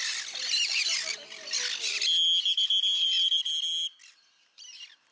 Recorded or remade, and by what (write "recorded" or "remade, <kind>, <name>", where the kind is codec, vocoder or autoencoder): recorded